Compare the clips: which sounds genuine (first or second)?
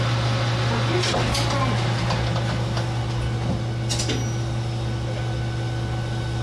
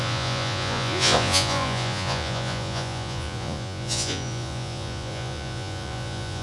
first